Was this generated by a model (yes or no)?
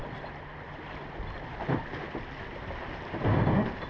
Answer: no